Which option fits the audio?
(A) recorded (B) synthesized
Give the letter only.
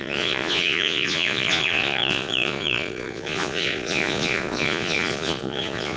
B